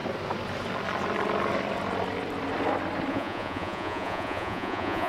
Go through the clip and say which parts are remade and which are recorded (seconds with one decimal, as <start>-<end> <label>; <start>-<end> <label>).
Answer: 0.0-3.1 recorded; 3.1-5.1 remade